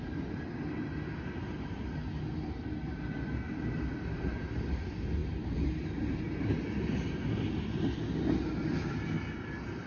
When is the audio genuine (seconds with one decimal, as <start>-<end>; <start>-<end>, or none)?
0.0-9.9